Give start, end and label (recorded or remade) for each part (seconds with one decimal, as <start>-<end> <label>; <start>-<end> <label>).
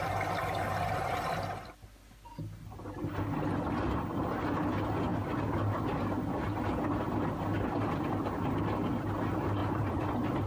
0.0-9.6 recorded; 9.6-10.5 remade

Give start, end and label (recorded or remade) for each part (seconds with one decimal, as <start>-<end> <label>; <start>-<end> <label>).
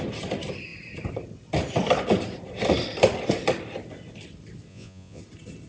0.0-4.7 recorded; 4.7-5.2 remade; 5.2-5.7 recorded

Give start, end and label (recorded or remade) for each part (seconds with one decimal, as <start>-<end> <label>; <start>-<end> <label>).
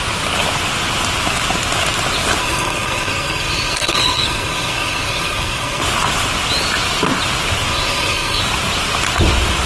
0.0-2.4 recorded; 2.4-5.8 remade; 5.8-7.7 recorded; 7.7-8.4 remade; 8.4-9.7 recorded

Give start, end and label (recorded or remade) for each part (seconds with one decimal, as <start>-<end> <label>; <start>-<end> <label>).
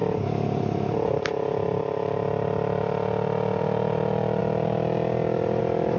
0.0-6.0 recorded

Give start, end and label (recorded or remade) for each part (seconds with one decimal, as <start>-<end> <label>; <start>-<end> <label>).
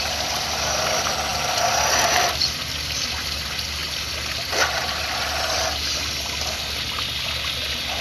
0.0-8.0 recorded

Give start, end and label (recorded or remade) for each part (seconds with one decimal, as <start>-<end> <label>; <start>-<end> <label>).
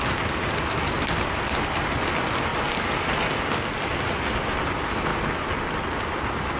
0.0-6.6 recorded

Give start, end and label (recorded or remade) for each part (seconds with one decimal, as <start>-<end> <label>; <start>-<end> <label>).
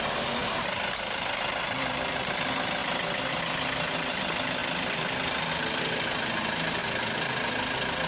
0.0-0.4 recorded; 0.4-2.3 remade; 2.3-2.8 recorded; 2.8-3.4 remade; 3.4-4.6 recorded; 4.6-5.5 remade; 5.5-8.1 recorded